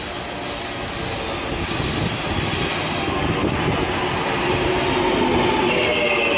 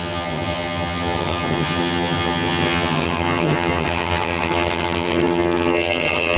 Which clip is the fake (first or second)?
second